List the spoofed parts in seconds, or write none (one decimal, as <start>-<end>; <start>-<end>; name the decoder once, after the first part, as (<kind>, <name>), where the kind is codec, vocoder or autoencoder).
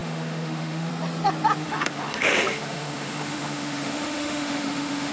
0.0-0.9 (autoencoder, DAC-VAE); 1.6-5.1